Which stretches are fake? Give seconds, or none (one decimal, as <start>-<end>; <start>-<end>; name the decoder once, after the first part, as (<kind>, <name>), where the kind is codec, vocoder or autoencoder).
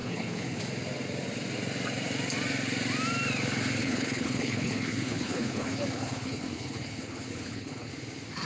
0.0-0.6 (codec, HILCodec); 3.8-7.9